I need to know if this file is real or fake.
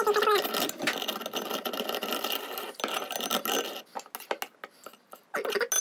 real